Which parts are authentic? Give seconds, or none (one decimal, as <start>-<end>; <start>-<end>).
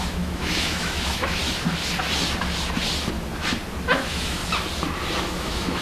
1.4-3.9; 4.4-5.2